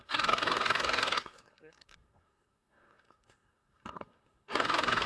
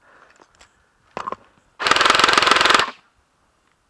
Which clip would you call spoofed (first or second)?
first